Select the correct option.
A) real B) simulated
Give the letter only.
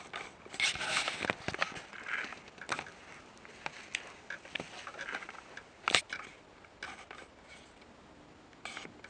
A